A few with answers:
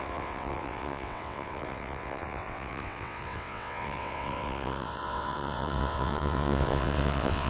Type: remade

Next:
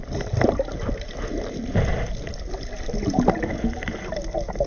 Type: recorded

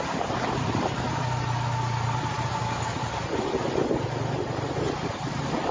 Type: recorded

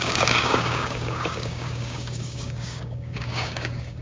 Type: remade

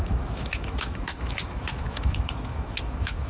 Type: remade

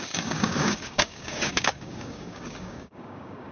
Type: remade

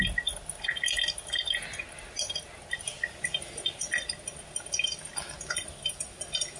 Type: recorded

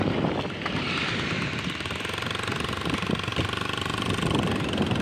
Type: remade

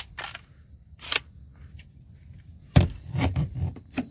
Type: recorded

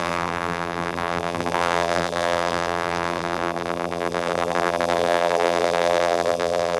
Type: remade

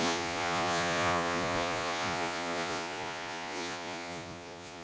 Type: remade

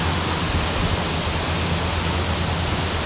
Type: recorded